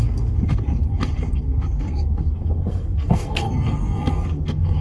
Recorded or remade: remade